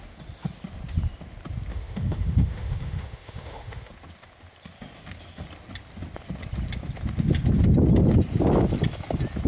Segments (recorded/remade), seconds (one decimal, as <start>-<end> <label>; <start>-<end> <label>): 0.0-1.7 recorded; 1.7-3.9 remade; 3.9-9.5 recorded